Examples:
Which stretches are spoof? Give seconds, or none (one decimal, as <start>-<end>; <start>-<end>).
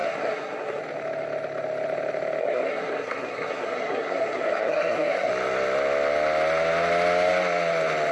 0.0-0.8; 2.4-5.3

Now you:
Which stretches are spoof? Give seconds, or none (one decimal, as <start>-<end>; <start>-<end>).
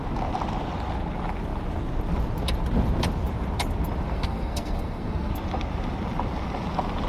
4.1-5.3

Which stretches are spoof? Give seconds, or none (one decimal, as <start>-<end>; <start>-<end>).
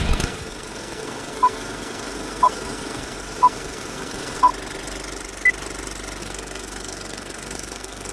0.0-4.5; 6.2-8.1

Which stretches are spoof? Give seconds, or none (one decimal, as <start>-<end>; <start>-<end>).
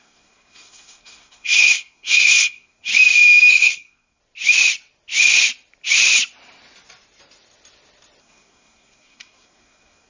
0.0-2.9; 3.5-4.2; 8.2-10.1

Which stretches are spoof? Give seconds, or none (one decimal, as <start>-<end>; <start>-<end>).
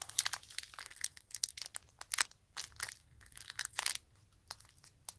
0.8-1.5; 3.0-3.9